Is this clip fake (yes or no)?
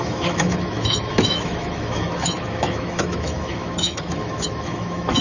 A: yes